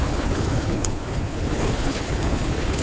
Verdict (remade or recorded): remade